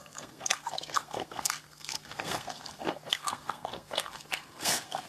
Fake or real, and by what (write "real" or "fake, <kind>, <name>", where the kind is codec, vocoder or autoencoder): fake, codec, SNAC